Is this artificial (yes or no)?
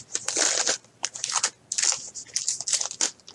no